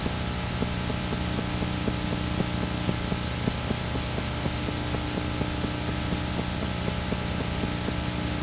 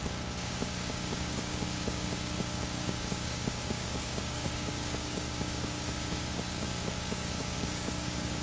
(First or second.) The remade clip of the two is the second